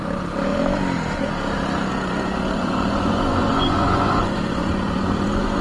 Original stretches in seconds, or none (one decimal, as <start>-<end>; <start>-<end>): 0.0-1.9